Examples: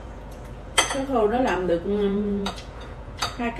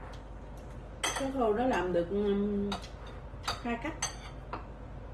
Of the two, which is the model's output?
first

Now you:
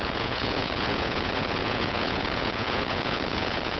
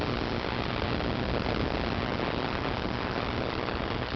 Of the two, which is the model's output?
first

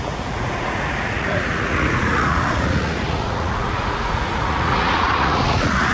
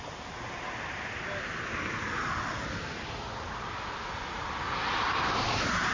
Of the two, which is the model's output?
first